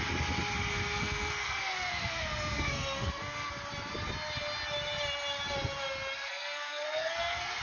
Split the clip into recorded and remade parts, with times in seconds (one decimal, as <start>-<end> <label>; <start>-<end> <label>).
0.0-0.7 recorded; 0.7-3.5 remade; 3.5-6.2 recorded; 6.2-7.6 remade